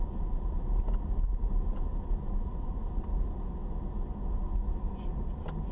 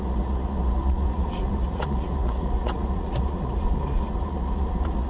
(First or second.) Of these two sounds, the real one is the first